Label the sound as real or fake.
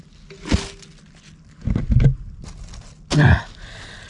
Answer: real